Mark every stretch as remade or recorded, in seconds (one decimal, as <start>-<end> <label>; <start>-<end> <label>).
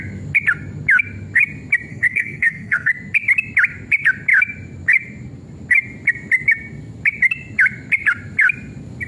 0.0-1.9 recorded; 1.9-2.9 remade; 2.9-9.1 recorded